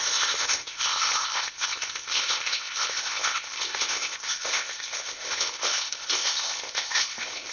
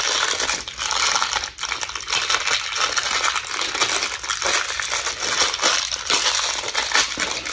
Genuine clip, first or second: second